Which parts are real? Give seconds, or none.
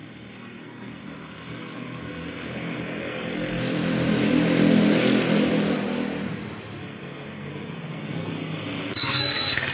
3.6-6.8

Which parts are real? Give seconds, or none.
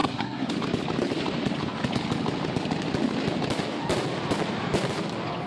0.5-5.5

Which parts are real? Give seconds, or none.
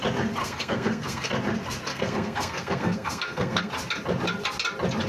0.0-0.4; 1.3-1.9; 3.7-5.1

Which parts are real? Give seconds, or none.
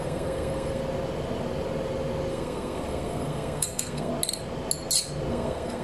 0.8-2.3; 4.1-5.3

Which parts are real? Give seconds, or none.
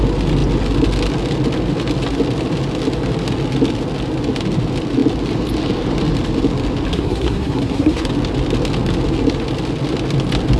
0.0-6.9; 8.1-10.6